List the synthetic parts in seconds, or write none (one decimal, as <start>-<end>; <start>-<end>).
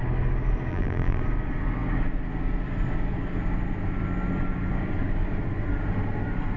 0.7-1.2